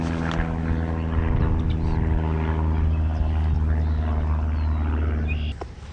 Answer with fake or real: real